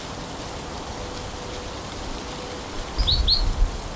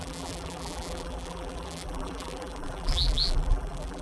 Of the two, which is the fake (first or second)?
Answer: second